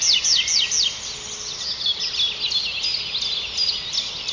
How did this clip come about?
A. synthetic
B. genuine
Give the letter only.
B